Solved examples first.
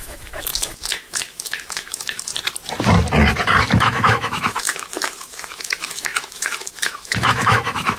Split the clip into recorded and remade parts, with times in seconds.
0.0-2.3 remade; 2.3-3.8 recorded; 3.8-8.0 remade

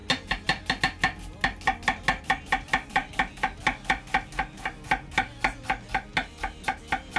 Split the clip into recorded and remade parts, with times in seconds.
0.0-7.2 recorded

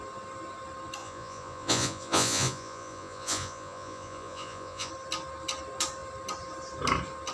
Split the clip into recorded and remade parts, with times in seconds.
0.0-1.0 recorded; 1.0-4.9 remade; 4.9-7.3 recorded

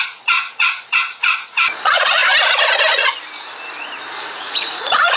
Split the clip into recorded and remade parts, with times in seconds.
0.0-2.2 remade; 2.2-4.2 recorded; 4.2-5.2 remade

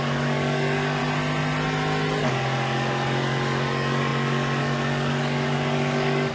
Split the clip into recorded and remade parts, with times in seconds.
0.0-1.0 remade; 1.0-2.2 recorded; 2.2-6.3 remade

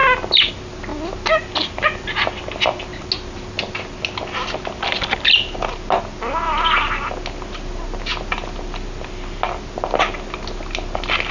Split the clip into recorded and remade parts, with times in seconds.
0.0-11.3 recorded

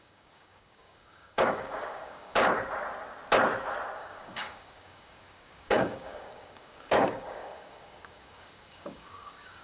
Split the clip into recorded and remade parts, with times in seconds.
0.0-2.5 remade; 2.5-4.0 recorded; 4.0-9.6 remade

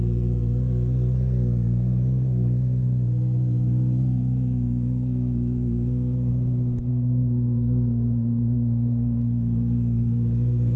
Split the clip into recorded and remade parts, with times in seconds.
0.0-6.3 remade; 6.3-6.9 recorded; 6.9-10.8 remade